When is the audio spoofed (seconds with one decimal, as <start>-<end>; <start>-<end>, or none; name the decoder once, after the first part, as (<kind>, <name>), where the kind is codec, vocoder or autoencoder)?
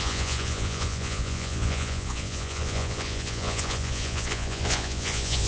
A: 0.0-5.5 (vocoder, Vocos)